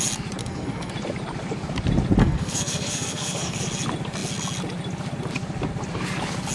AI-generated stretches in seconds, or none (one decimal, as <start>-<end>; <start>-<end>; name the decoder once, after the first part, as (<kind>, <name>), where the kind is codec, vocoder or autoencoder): 0.4-0.9 (codec, SNAC); 2.2-3.6